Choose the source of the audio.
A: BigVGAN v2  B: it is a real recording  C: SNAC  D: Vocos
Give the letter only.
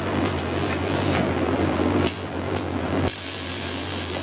A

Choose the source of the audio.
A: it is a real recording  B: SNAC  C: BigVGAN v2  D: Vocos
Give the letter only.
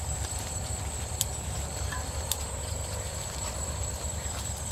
C